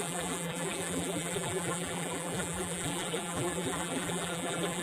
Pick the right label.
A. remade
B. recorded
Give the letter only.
A